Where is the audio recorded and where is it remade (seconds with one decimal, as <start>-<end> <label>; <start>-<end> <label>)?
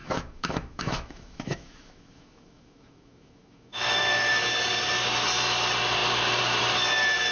0.0-4.3 remade; 4.3-7.3 recorded